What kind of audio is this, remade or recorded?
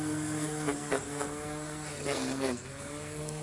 remade